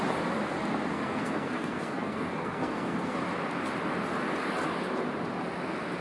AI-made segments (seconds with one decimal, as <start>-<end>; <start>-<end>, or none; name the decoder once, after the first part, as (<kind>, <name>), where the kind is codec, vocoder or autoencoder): 0.9-3.2 (codec, SNAC)